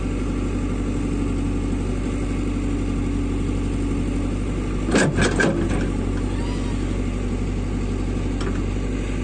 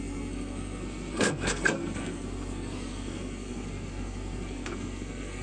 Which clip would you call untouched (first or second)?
first